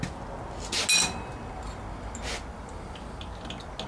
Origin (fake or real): real